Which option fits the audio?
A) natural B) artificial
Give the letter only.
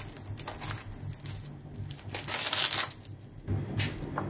A